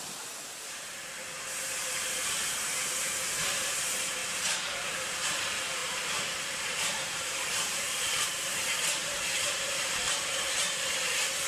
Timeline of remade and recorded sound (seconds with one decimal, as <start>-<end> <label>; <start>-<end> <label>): 0.0-11.5 remade